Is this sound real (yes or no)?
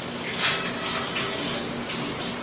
yes